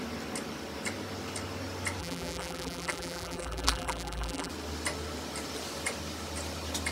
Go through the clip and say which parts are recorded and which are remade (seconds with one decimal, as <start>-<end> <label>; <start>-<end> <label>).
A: 0.0-2.0 recorded; 2.0-4.5 remade; 4.5-6.9 recorded